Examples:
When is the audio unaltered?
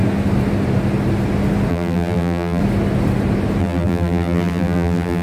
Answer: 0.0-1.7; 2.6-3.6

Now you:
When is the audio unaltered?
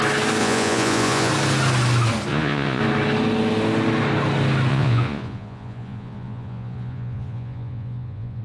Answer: 0.0-0.4; 1.3-2.3; 2.8-4.7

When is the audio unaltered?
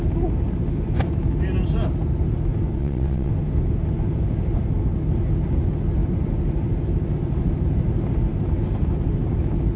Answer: 0.0-2.8; 3.3-9.8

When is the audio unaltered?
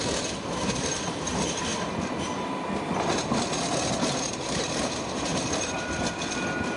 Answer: 0.0-1.7; 2.5-5.3; 6.0-6.8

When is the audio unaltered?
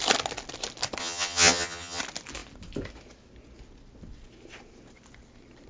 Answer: 0.0-1.0; 2.0-5.7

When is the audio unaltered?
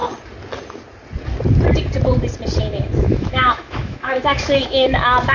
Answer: 0.0-2.6